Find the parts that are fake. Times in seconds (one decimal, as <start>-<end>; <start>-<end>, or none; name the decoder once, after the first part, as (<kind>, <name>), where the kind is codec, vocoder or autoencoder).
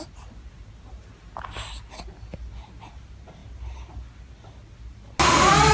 none